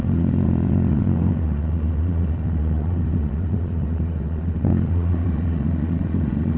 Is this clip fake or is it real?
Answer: fake